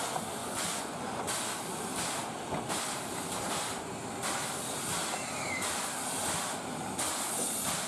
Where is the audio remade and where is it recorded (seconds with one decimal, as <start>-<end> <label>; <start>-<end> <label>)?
0.0-0.4 recorded; 0.4-1.2 remade; 1.2-7.9 recorded